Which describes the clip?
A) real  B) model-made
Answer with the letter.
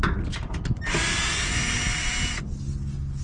A